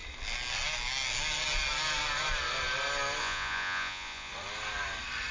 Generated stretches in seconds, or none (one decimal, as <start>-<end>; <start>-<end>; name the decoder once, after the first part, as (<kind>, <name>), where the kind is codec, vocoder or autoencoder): 3.2-4.3 (vocoder, Vocos)